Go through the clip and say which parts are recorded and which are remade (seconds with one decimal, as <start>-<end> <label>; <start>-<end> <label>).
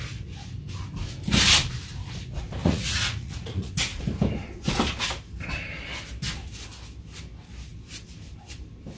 0.0-2.6 recorded; 2.6-3.7 remade; 3.7-9.0 recorded